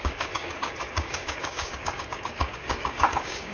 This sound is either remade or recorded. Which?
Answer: remade